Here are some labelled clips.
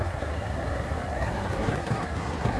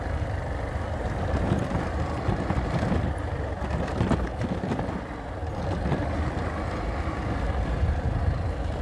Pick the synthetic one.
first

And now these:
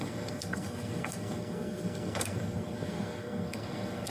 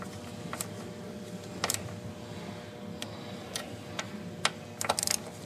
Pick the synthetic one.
first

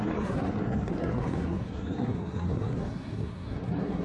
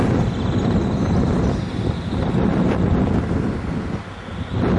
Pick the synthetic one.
first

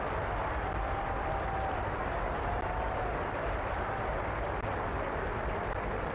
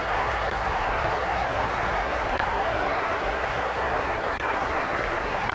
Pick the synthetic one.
second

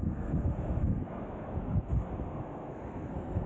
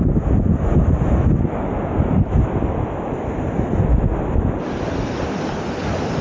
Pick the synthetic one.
first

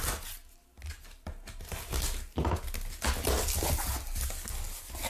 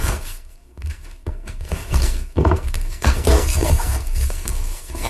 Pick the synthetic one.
second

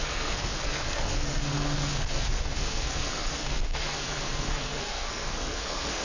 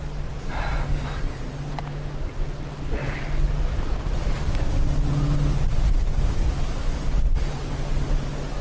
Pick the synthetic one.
first